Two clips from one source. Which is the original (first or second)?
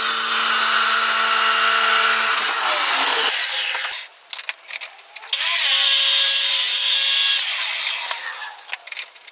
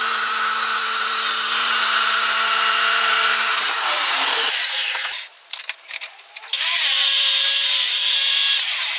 first